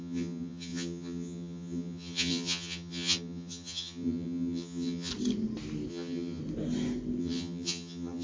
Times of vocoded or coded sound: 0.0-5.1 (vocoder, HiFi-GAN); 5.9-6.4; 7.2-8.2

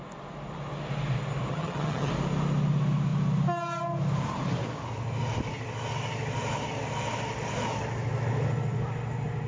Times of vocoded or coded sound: 1.5-2.1 (vocoder, HiFi-GAN)